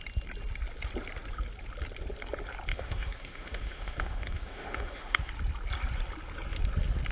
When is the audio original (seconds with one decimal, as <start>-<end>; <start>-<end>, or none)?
0.0-2.7; 5.3-7.1

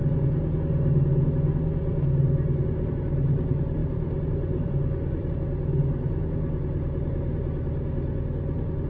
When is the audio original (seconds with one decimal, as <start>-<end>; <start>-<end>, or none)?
0.0-3.8; 5.3-8.9

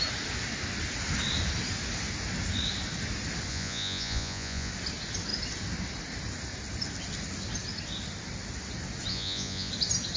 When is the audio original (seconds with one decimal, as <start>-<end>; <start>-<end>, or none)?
0.0-3.5; 4.7-9.1; 9.7-10.2

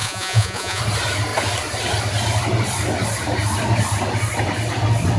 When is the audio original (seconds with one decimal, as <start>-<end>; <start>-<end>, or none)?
0.8-5.2

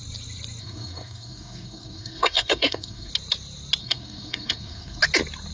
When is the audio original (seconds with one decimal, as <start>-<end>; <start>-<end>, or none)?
0.0-0.6; 3.1-3.8; 5.0-5.5

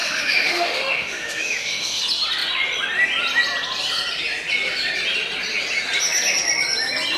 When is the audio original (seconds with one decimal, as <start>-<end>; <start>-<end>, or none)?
2.0-7.2

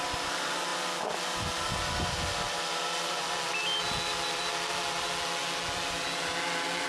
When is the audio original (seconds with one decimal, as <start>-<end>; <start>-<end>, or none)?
0.0-6.9

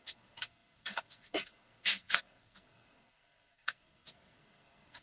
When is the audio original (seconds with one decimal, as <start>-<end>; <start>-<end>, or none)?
none